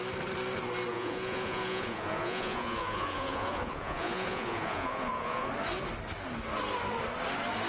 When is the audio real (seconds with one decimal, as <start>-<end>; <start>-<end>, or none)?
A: 0.0-0.9; 5.5-7.7